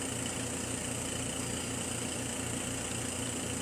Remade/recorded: recorded